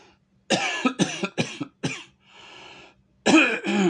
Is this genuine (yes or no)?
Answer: yes